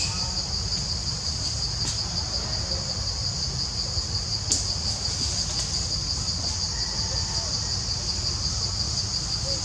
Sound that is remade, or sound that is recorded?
recorded